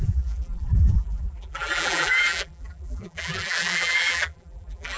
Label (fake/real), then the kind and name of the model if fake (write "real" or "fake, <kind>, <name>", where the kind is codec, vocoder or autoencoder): fake, vocoder, BigVGAN v2